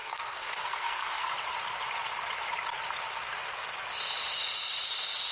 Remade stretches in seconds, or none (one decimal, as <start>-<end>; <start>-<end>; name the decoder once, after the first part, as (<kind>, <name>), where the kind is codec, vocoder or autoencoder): 0.0-1.3 (codec, SNAC)